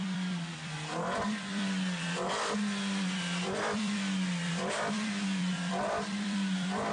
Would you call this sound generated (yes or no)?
yes